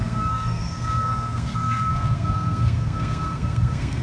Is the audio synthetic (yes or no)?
yes